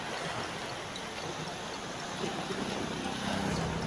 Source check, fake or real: real